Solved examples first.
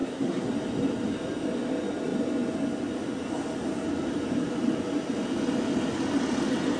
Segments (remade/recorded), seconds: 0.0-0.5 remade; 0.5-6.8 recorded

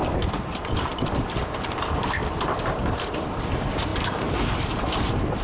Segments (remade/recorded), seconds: 0.0-5.4 remade

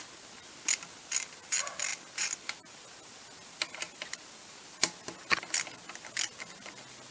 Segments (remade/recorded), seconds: 0.0-7.1 recorded

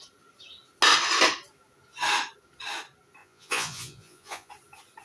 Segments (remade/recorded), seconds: 0.0-3.2 recorded; 3.2-4.5 remade; 4.5-5.0 recorded

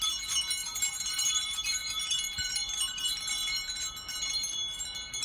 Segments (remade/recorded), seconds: 0.0-0.6 recorded; 0.6-3.7 remade; 3.7-5.2 recorded

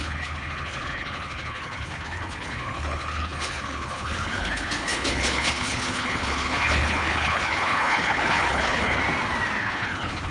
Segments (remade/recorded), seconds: 0.0-9.0 remade; 9.0-9.6 recorded; 9.6-10.3 remade

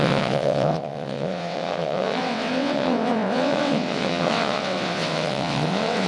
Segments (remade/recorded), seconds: 0.0-6.1 remade

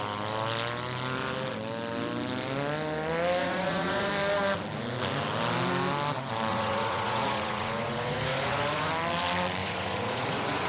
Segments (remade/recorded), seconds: 0.0-3.4 recorded; 3.4-4.1 remade; 4.1-6.5 recorded; 6.5-8.9 remade; 8.9-9.6 recorded; 9.6-10.7 remade